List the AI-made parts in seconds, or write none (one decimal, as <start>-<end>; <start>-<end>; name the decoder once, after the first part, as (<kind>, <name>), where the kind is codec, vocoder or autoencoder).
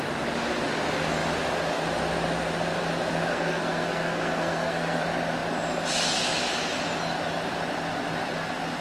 3.3-5.0 (codec, SNAC)